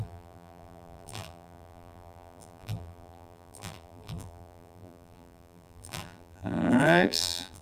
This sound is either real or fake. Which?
fake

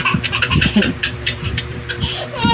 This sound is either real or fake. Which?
fake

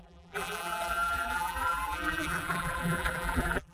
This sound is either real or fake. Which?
fake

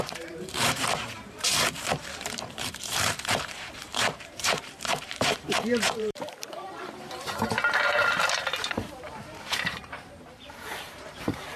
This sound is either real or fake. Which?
fake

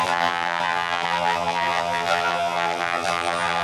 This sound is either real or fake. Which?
fake